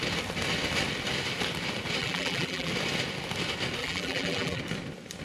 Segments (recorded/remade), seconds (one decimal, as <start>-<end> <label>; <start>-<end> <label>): 0.0-2.0 recorded; 2.0-2.7 remade; 2.7-3.8 recorded; 3.8-4.6 remade; 4.6-5.2 recorded